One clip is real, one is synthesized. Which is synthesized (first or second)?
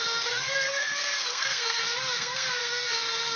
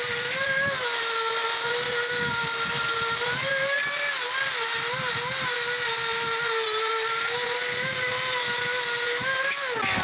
first